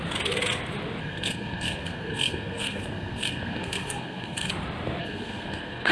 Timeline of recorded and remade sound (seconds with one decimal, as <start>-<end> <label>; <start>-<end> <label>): 0.0-1.0 recorded; 1.0-4.5 remade; 4.5-5.0 recorded; 5.0-5.9 remade

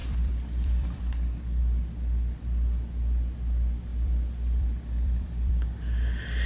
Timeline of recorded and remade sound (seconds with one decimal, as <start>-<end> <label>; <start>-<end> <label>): 0.0-1.0 remade; 1.0-3.9 recorded; 3.9-5.5 remade; 5.5-6.5 recorded

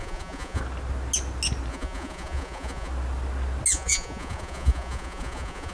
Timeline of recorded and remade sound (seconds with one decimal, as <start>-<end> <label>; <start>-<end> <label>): 0.0-0.6 remade; 0.6-1.7 recorded; 1.7-2.9 remade; 2.9-3.7 recorded; 3.7-5.7 remade